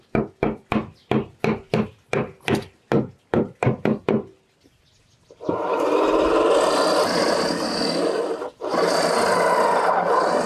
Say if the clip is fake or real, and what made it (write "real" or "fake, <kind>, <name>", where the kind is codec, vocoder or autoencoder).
real